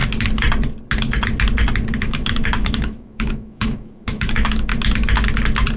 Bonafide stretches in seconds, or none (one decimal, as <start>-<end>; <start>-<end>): 0.0-2.0; 4.7-5.8